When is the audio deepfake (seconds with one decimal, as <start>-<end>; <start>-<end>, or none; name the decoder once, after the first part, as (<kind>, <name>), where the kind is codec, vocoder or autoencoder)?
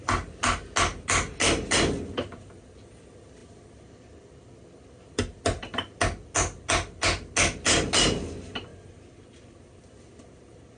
none